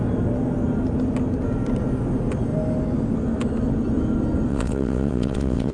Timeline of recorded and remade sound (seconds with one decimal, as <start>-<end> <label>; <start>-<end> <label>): 0.0-4.5 recorded; 4.5-5.7 remade